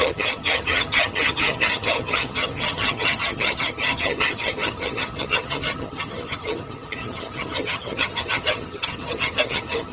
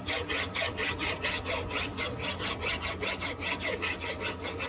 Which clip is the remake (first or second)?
first